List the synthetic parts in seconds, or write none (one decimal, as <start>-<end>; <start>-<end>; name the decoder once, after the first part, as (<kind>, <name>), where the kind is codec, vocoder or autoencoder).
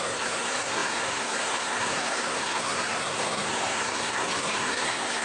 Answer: 0.0-5.2 (codec, SNAC)